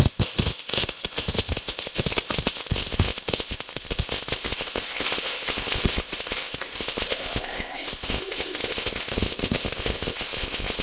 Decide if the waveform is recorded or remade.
remade